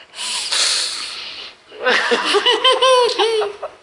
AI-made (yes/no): no